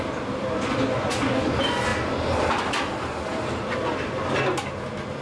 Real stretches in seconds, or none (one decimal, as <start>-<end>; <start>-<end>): 0.0-5.2